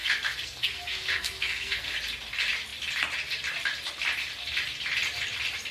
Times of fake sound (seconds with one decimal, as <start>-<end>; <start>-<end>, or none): 0.0-1.9